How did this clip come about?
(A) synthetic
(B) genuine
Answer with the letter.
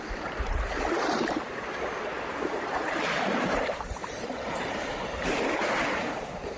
A